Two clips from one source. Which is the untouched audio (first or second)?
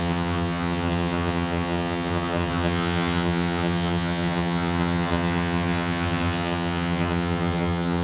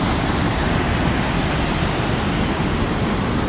second